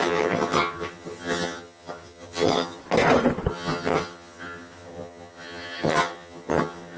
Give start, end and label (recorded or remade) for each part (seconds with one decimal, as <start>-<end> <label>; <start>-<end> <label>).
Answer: 0.0-2.8 remade; 2.8-3.5 recorded; 3.5-7.0 remade